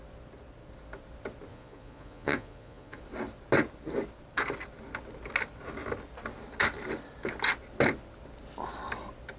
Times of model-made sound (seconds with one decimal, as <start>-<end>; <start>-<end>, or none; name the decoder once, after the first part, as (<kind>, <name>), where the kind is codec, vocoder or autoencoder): 1.5-3.0 (vocoder, Vocos)